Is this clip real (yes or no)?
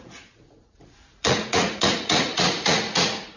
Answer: no